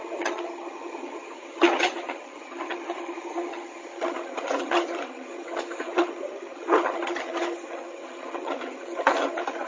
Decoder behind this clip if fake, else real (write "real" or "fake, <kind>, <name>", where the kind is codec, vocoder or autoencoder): fake, vocoder, HiFi-GAN